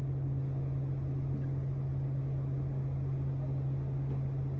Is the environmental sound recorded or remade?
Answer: recorded